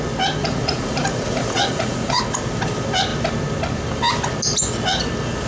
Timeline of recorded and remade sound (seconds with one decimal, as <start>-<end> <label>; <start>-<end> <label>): 0.0-0.4 recorded; 0.4-2.2 remade; 2.2-5.5 recorded